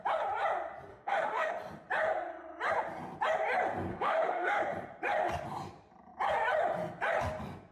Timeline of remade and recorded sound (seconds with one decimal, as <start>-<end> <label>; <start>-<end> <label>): 0.0-0.9 recorded; 0.9-1.5 remade; 1.5-3.9 recorded; 3.9-4.6 remade; 4.6-7.7 recorded